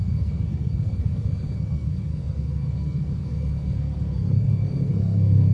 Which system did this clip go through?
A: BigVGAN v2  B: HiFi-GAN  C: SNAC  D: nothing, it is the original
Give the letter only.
C